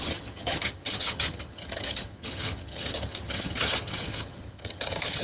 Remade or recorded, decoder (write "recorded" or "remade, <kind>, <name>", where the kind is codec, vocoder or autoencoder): remade, vocoder, HiFi-GAN